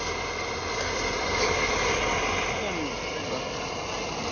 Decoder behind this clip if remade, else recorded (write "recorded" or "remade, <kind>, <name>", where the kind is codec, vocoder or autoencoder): recorded